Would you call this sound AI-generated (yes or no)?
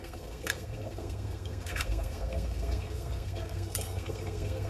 yes